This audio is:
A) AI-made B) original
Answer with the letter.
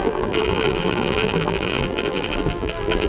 A